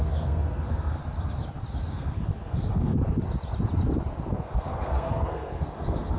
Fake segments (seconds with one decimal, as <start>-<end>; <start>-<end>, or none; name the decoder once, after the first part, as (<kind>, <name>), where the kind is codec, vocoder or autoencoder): 0.0-1.0 (codec, SNAC); 1.9-2.9; 4.3-6.2